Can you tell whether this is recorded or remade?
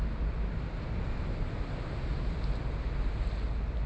recorded